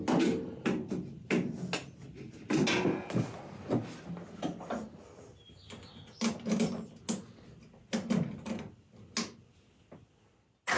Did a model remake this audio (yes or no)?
no